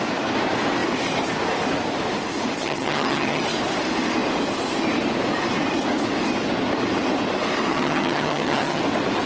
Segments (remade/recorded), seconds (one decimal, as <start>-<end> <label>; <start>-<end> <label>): 0.0-2.6 recorded; 2.6-3.4 remade; 3.4-7.7 recorded; 7.7-8.8 remade; 8.8-9.3 recorded